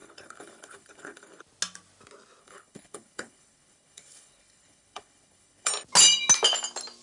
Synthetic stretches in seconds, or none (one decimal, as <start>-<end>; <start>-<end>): 0.0-1.4; 2.4-5.7